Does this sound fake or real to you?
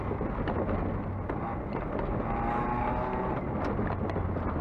real